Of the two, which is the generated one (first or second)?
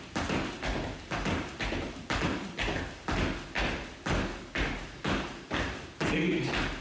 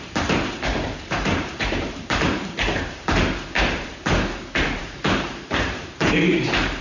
second